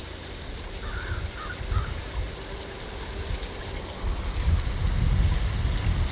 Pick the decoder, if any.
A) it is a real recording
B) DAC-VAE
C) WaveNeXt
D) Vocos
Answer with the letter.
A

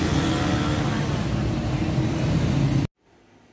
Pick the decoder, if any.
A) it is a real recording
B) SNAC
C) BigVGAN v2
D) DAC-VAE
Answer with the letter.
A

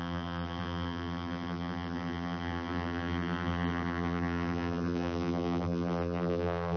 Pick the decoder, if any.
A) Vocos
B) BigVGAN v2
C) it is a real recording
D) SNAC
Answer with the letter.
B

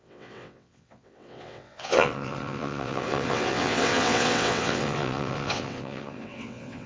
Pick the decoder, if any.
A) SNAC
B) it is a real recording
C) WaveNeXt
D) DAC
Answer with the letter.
C